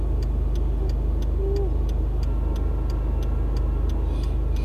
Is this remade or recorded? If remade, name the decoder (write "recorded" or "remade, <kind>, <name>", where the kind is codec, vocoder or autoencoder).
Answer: recorded